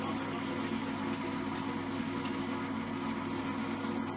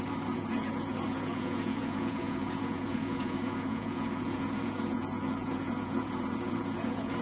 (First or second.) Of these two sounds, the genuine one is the first